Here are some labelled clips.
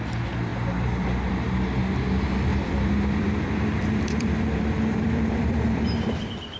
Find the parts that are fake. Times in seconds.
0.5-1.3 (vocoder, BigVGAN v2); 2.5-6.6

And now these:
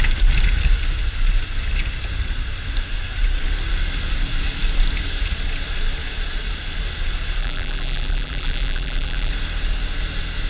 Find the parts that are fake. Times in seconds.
7.4-9.3 (vocoder, BigVGAN v2)

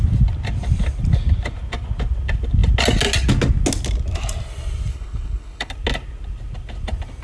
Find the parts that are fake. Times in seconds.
4.9-5.7 (codec, HILCodec)

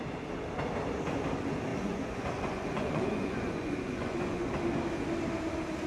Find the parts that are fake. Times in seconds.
1.7-4.5 (vocoder, Vocos)